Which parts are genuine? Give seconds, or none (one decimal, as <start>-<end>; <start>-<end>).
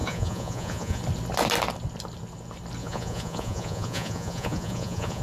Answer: 1.0-2.8